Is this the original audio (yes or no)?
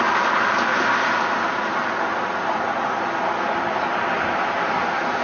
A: yes